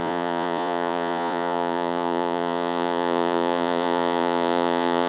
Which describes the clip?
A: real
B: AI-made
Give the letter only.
B